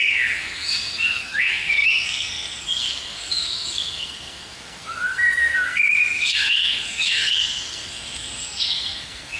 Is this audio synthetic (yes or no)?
yes